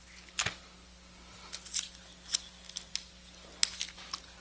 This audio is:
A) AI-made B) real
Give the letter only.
B